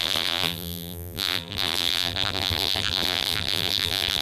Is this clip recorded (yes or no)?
no